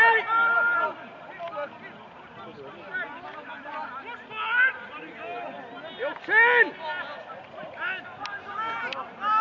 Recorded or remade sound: recorded